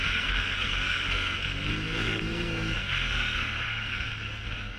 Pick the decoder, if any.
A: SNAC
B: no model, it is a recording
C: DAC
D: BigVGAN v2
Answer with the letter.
A